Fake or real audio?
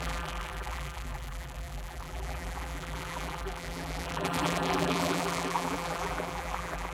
fake